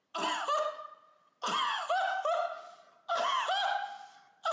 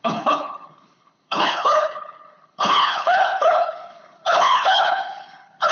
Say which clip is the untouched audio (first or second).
first